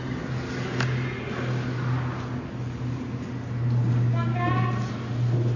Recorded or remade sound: recorded